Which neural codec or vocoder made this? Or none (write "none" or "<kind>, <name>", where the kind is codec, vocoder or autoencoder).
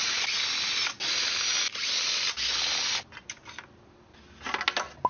none